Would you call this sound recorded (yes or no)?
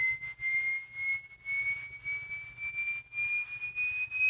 yes